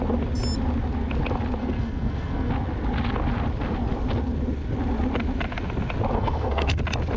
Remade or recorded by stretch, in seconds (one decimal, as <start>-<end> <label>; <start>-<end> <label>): 0.0-1.6 recorded; 1.6-2.5 remade; 2.5-6.1 recorded; 6.1-6.8 remade; 6.8-7.2 recorded